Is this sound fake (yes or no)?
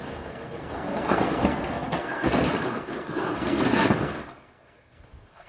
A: yes